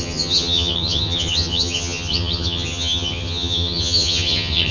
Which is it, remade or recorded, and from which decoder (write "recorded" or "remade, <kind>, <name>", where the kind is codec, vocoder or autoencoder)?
remade, vocoder, HiFi-GAN